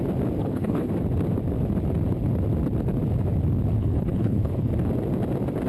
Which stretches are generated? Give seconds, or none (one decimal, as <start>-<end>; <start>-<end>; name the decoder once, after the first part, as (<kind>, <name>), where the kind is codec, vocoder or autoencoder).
0.4-0.9 (codec, HILCodec); 3.8-4.7